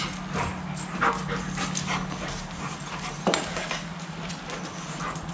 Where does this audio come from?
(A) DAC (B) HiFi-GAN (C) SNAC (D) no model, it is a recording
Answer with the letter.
D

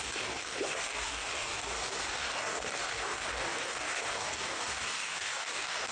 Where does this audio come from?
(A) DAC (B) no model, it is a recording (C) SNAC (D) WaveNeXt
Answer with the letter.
A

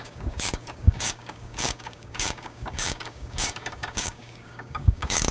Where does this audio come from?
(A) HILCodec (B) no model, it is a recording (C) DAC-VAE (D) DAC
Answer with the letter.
D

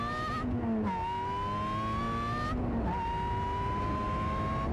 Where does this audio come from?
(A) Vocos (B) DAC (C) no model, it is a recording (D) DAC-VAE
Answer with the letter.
C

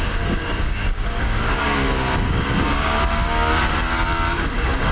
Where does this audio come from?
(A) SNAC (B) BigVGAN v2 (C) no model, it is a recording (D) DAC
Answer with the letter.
D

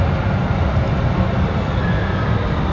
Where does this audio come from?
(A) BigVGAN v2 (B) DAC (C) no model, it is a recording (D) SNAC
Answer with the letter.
C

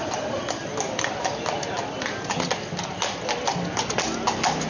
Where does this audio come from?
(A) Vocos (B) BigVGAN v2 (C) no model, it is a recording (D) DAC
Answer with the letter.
C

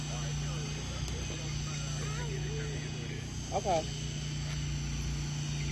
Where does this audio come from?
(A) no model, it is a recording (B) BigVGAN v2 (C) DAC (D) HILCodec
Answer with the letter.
A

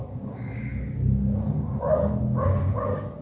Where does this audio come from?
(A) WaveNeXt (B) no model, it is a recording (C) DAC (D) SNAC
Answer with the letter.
C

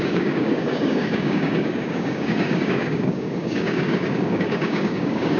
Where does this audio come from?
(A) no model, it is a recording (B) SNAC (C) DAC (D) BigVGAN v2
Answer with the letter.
C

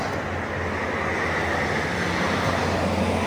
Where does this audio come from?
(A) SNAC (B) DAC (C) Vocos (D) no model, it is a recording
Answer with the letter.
D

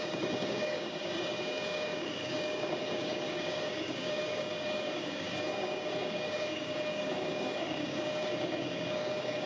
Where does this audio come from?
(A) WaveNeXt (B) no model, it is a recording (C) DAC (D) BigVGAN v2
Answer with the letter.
C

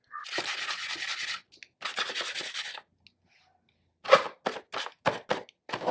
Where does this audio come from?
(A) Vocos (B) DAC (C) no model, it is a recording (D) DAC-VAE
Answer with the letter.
C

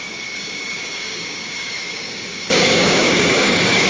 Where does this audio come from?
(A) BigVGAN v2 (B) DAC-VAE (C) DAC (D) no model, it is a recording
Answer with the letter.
C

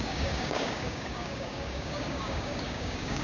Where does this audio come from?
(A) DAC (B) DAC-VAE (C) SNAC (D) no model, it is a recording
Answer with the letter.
A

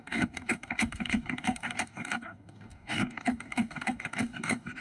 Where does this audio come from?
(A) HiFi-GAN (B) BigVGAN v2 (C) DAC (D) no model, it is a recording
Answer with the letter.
C